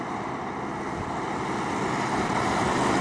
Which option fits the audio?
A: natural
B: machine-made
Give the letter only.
A